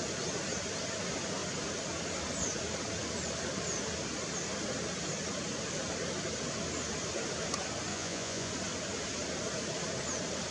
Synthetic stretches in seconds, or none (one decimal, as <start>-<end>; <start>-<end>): 7.9-8.5